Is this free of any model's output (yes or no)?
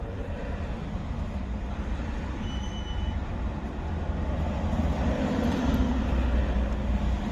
yes